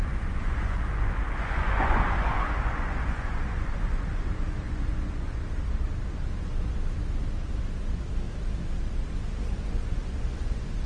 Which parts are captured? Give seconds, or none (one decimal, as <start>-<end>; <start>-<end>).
5.4-9.5